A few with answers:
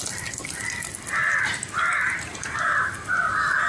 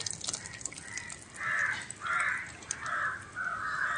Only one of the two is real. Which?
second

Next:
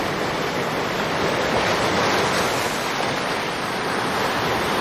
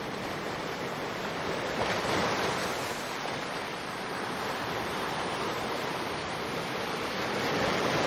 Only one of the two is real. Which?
first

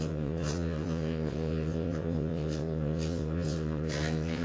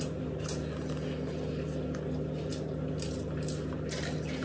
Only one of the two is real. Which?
second